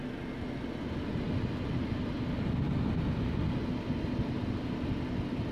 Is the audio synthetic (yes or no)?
no